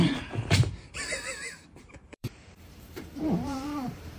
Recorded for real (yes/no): no